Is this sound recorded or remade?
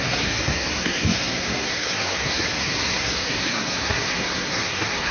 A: remade